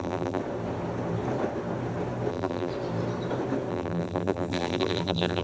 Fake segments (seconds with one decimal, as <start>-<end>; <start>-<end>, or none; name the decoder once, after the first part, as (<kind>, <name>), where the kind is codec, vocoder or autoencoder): 0.0-0.4 (vocoder, BigVGAN v2); 2.3-2.7; 3.7-5.4